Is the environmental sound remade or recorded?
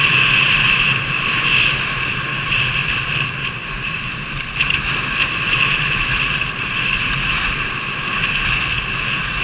recorded